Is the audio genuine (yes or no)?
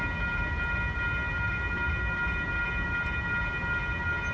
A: yes